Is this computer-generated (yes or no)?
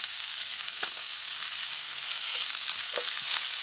yes